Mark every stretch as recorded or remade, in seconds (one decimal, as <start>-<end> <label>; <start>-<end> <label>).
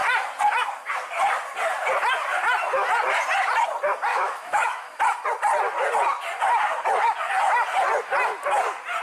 0.0-4.1 recorded; 4.1-5.0 remade; 5.0-9.0 recorded